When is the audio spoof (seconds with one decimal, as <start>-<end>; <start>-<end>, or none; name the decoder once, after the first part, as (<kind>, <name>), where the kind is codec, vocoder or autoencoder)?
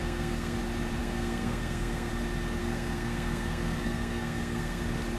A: 0.0-0.6 (codec, SNAC); 1.0-2.1; 2.6-4.8